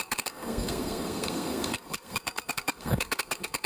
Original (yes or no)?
no